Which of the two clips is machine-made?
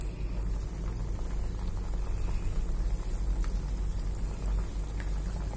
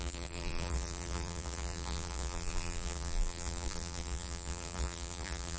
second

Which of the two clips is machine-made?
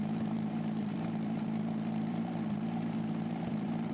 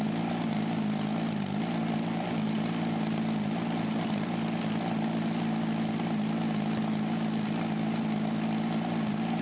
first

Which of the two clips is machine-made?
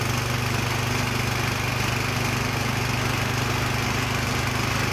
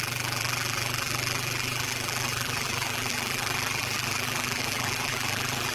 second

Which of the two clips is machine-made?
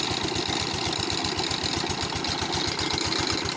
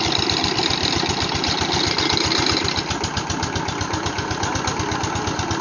second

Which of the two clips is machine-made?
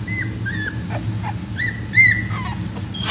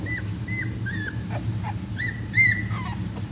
second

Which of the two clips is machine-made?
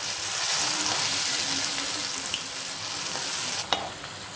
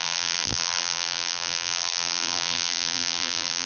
second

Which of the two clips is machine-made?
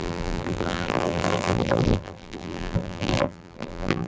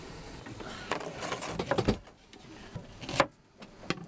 first